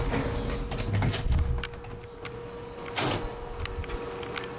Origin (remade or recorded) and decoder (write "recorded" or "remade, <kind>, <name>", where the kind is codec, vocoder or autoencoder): recorded